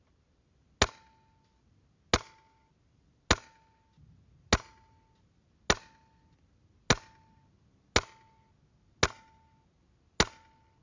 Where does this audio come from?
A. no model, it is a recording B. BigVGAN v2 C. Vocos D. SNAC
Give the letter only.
A